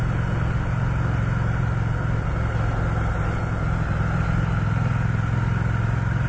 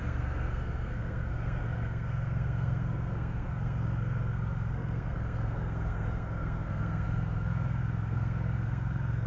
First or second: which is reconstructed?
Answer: second